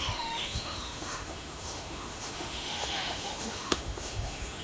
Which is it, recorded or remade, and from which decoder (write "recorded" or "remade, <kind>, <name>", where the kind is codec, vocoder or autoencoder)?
remade, autoencoder, DAC-VAE